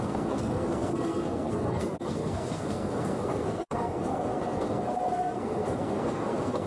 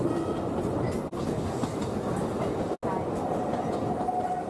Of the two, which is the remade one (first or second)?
first